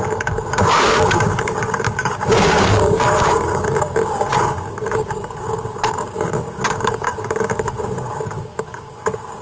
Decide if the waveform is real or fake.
fake